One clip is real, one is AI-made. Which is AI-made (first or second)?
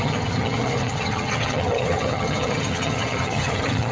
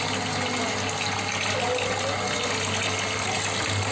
first